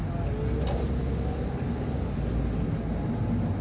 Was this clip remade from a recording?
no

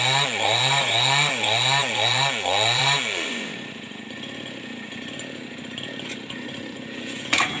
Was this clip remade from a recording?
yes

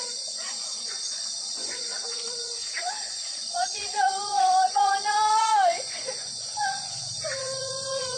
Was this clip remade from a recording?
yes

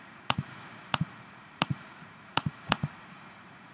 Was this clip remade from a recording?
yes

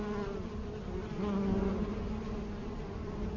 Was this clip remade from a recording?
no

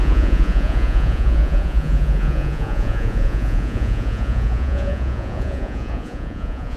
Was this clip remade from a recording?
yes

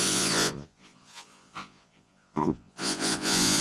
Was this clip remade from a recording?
yes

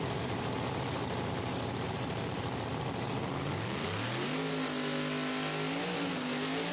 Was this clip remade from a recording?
no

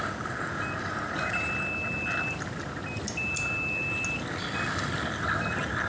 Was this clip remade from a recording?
no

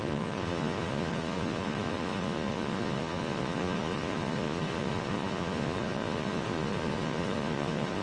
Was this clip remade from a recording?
yes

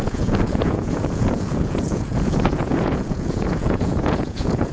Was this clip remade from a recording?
yes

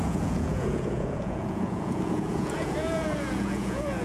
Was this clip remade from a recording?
yes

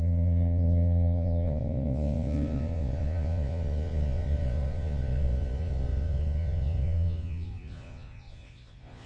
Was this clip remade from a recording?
yes